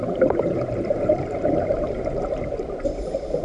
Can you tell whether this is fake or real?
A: fake